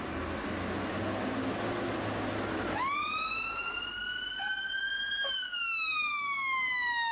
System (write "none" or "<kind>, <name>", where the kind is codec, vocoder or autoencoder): none